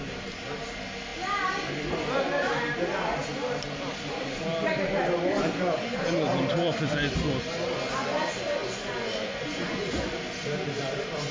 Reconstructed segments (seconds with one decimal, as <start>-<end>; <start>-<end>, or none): 8.6-10.1